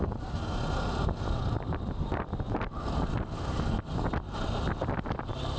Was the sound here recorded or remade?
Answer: recorded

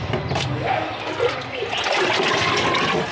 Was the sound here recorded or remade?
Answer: recorded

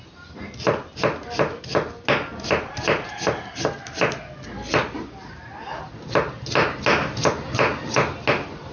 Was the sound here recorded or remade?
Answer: recorded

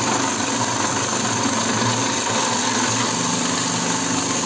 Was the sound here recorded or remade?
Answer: recorded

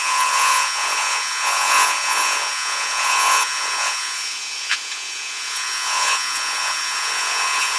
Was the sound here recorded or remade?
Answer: remade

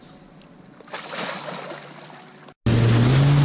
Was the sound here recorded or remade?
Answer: recorded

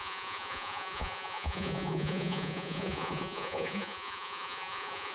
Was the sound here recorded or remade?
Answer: remade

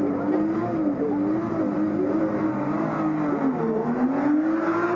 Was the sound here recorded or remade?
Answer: recorded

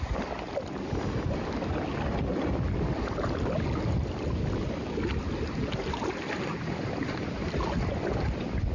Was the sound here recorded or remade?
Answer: recorded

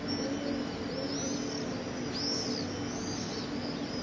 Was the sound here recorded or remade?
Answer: recorded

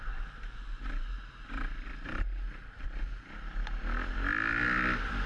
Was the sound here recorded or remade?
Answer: recorded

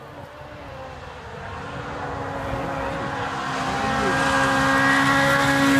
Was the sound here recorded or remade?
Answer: recorded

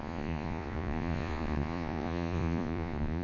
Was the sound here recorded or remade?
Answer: remade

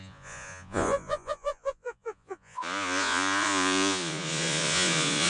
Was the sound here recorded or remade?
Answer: remade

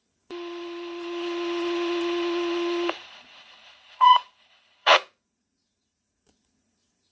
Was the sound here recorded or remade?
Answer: remade